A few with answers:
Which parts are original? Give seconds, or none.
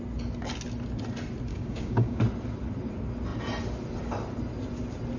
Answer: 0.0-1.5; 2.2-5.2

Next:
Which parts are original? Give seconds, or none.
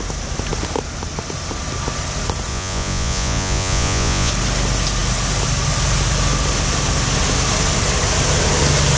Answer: 0.0-2.5; 4.3-9.0